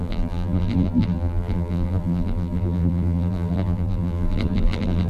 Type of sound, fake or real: fake